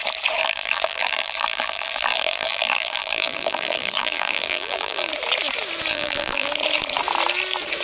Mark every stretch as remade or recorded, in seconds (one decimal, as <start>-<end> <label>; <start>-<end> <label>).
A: 0.0-0.4 recorded; 0.4-5.1 remade; 5.1-5.9 recorded; 5.9-6.5 remade; 6.5-7.8 recorded